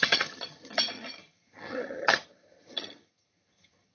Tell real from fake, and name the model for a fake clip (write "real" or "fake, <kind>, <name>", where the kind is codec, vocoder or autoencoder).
fake, vocoder, HiFi-GAN